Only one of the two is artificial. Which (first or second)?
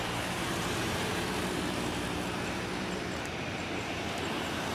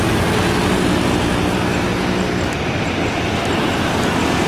first